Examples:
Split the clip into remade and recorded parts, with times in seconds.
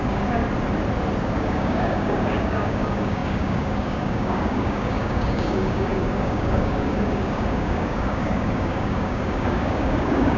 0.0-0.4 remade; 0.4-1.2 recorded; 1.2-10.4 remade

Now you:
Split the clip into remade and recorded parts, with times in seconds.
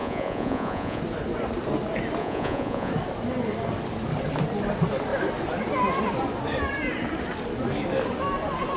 0.0-1.0 remade; 1.0-2.2 recorded; 2.2-2.9 remade; 2.9-8.8 recorded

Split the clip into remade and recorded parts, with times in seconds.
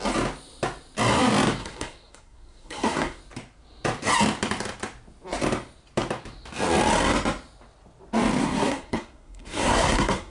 0.0-1.6 recorded; 1.6-3.2 remade; 3.2-8.4 recorded; 8.4-10.3 remade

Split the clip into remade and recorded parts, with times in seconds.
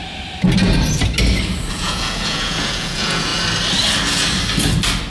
0.0-1.7 recorded; 1.7-3.3 remade; 3.3-5.1 recorded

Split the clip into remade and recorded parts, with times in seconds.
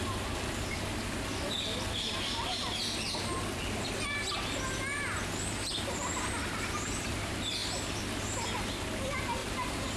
0.0-9.4 recorded; 9.4-10.0 remade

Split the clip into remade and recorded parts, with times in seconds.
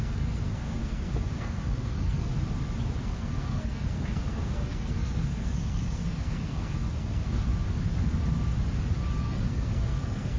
0.0-2.3 remade; 2.3-3.0 recorded; 3.0-7.5 remade; 7.5-9.2 recorded; 9.2-10.4 remade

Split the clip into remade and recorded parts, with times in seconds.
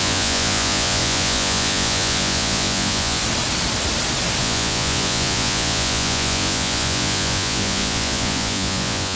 0.0-3.2 remade; 3.2-4.4 recorded; 4.4-9.2 remade